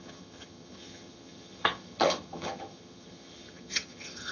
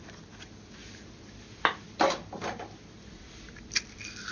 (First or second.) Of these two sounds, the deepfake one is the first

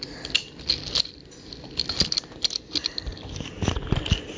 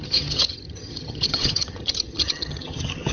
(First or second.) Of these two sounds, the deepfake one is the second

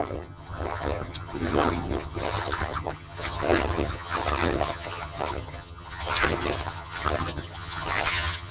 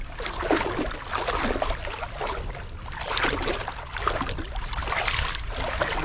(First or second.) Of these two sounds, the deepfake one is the first